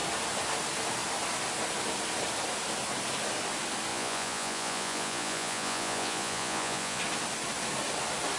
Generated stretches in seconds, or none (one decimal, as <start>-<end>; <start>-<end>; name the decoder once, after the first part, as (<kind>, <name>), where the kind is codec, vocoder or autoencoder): 3.9-7.0 (vocoder, Vocos)